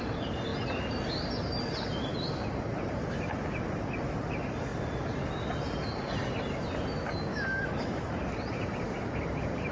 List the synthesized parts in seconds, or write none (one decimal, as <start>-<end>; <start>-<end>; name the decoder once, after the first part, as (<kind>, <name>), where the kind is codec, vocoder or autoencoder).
7.3-8.0 (autoencoder, DAC-VAE)